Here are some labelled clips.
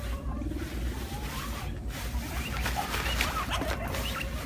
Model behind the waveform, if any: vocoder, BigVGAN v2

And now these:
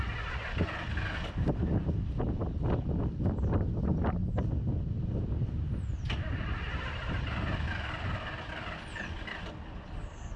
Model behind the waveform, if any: none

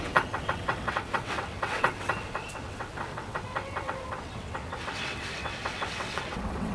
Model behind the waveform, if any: vocoder, WaveNeXt